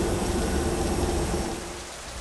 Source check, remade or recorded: recorded